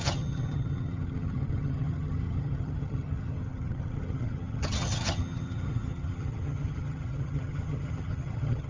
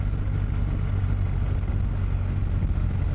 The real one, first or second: second